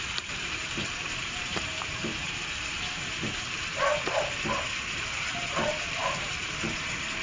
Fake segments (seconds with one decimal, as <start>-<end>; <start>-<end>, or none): 0.0-3.7; 4.9-7.2